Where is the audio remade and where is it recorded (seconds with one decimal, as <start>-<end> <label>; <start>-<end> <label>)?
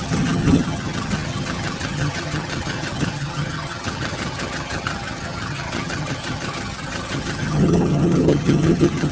0.0-9.1 remade